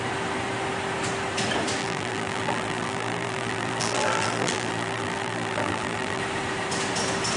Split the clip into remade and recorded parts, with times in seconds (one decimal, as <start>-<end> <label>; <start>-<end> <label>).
0.0-1.8 recorded; 1.8-6.2 remade; 6.2-7.4 recorded